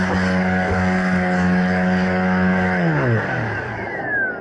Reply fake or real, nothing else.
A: fake